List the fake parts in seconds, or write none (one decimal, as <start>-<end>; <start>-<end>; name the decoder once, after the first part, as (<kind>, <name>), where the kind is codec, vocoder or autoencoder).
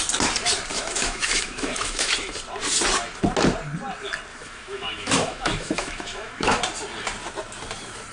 0.7-2.3 (autoencoder, DAC-VAE); 4.3-6.6